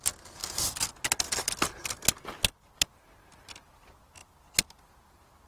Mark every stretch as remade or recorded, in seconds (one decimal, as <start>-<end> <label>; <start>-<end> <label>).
0.0-5.5 recorded